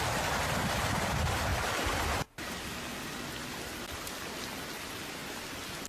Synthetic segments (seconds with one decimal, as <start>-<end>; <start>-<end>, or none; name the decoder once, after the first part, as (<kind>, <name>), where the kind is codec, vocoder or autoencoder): none